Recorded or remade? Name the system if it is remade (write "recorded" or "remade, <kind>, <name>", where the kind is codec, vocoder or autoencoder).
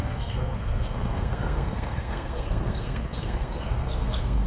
remade, codec, SNAC